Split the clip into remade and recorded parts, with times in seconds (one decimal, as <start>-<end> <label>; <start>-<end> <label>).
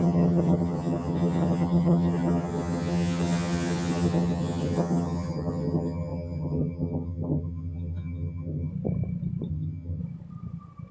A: 0.0-8.7 remade; 8.7-9.5 recorded; 9.5-10.0 remade; 10.0-10.9 recorded